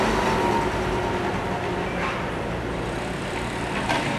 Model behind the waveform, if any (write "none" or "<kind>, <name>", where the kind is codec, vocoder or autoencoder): none